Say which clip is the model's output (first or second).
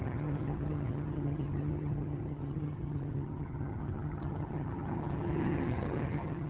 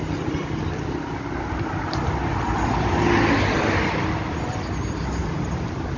first